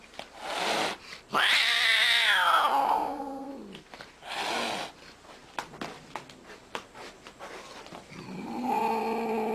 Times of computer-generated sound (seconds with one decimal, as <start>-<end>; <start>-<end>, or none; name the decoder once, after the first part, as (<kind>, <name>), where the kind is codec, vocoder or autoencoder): 2.8-3.5 (codec, SNAC)